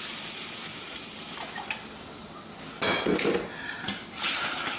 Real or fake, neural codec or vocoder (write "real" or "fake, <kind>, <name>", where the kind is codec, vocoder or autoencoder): real